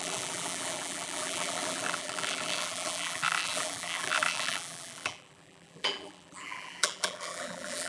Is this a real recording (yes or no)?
no